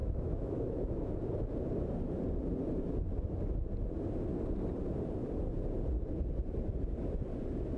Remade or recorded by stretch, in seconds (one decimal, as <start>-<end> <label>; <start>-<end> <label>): 0.0-1.1 remade; 1.1-7.8 recorded